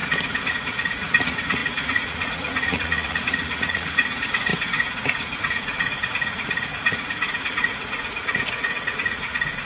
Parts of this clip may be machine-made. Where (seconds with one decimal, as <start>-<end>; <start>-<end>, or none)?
0.5-9.7